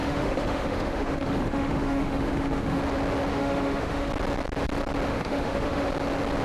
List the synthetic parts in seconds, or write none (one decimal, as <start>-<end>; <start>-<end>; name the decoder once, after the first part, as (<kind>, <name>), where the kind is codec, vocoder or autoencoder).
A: 0.0-2.8 (autoencoder, DAC-VAE); 3.3-4.1; 5.1-5.8